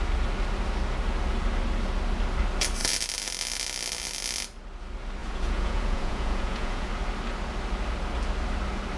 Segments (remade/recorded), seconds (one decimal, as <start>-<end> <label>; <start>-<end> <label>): 0.0-5.2 recorded; 5.2-6.9 remade; 6.9-9.0 recorded